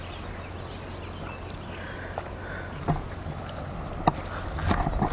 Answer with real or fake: real